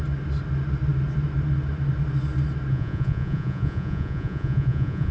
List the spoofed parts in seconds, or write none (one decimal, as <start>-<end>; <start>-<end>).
2.7-5.1